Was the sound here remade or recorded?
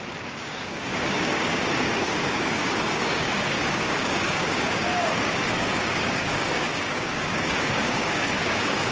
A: remade